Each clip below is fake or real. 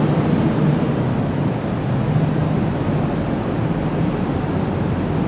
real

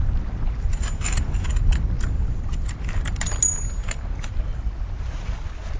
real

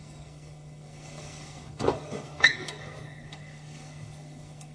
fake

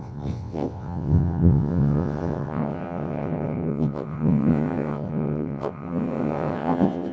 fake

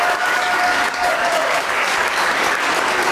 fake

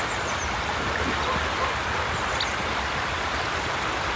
real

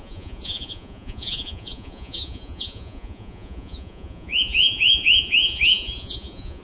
fake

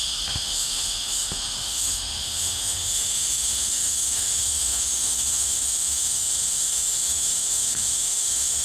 fake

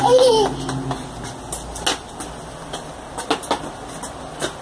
real